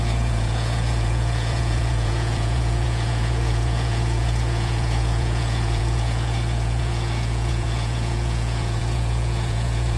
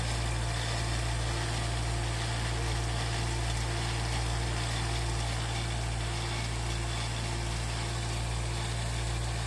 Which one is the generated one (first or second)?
first